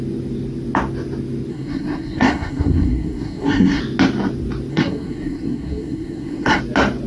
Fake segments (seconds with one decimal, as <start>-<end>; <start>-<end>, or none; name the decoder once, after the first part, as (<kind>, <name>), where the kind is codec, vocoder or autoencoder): 1.5-3.8 (codec, SNAC); 4.7-6.6